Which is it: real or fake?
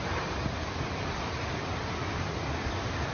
real